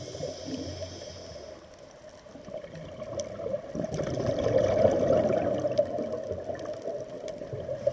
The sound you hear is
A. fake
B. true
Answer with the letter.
B